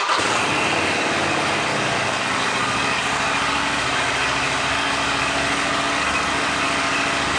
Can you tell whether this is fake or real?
fake